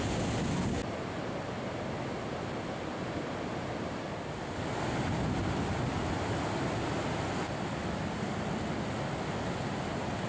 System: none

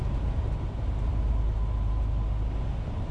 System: none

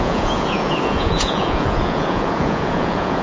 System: vocoder, Vocos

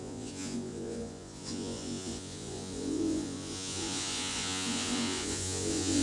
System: vocoder, Vocos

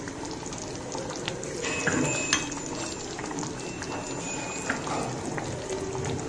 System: none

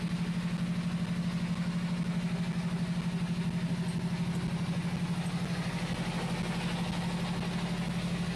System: none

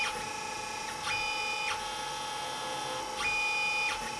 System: none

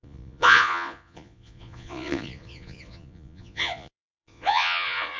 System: vocoder, Vocos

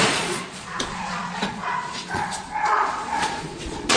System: vocoder, Vocos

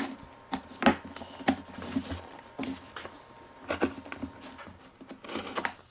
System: none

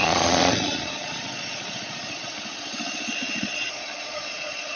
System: vocoder, Vocos